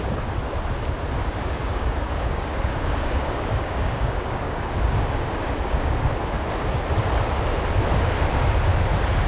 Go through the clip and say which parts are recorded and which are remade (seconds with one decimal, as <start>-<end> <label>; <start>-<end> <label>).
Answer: 0.0-1.2 recorded; 1.2-6.0 remade; 6.0-9.3 recorded